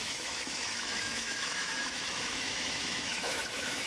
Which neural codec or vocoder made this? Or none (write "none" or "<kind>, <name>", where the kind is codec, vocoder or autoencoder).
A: autoencoder, DAC-VAE